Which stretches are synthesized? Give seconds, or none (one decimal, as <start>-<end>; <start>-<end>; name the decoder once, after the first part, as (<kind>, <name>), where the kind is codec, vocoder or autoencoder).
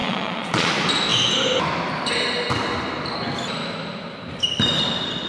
0.0-0.7 (vocoder, Vocos)